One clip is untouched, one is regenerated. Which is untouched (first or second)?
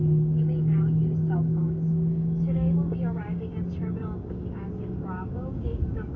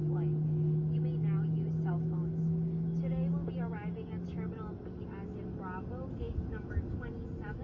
second